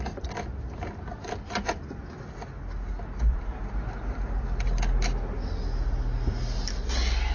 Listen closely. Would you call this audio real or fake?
real